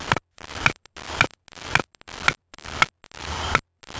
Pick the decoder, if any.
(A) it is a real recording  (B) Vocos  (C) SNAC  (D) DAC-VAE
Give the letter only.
A